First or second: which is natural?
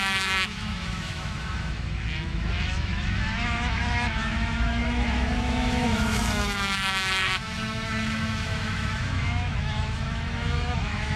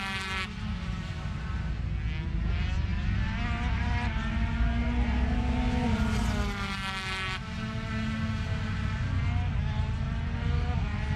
second